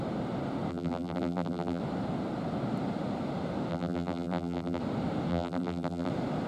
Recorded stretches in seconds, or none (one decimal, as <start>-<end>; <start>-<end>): 0.0-0.7; 1.8-3.7; 4.8-5.3; 6.1-6.5